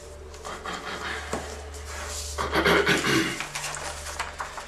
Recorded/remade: recorded